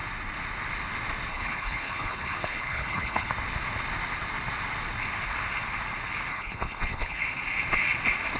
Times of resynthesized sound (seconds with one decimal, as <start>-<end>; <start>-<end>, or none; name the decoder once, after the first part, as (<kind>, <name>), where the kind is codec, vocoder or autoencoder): 1.3-3.3 (codec, HILCodec); 6.3-7.2